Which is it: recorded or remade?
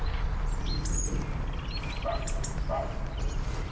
recorded